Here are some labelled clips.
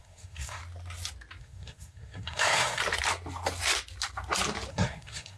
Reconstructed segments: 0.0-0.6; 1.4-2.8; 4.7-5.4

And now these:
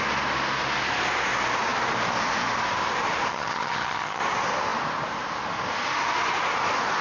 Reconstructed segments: 3.3-4.2

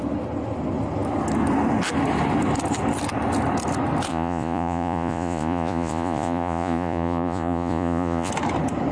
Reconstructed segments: 4.1-8.3

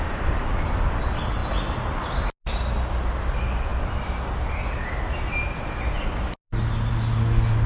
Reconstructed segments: none

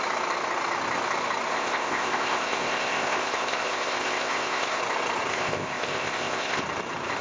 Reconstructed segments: 1.5-4.8; 5.3-6.6